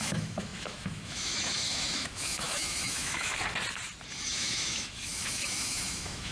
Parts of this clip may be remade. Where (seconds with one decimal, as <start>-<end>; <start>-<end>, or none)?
0.0-3.3; 4.2-6.3